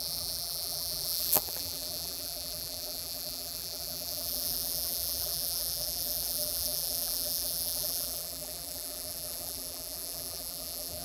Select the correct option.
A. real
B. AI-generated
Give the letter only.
B